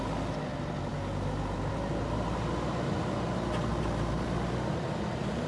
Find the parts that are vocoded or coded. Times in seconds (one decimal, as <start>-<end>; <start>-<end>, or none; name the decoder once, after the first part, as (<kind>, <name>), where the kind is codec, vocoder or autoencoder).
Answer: 3.7-4.9 (vocoder, BigVGAN v2)